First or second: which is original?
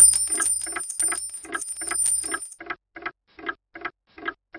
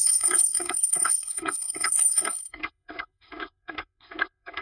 first